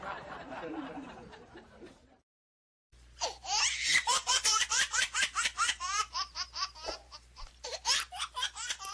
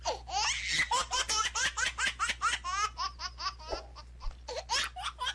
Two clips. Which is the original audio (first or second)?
second